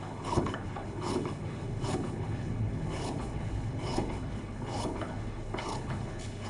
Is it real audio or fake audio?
fake